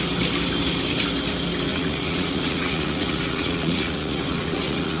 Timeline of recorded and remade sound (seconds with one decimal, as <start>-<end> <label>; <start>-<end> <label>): 0.0-1.7 recorded; 1.7-5.0 remade